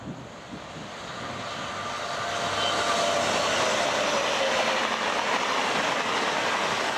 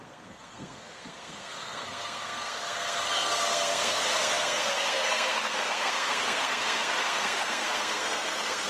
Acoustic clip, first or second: first